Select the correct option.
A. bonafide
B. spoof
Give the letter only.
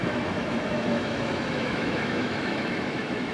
B